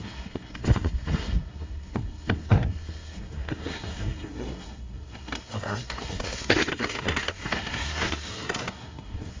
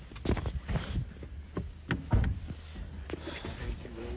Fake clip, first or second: first